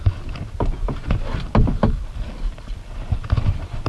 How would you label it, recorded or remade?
recorded